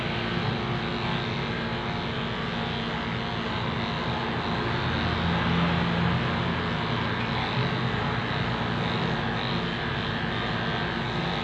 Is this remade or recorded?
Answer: recorded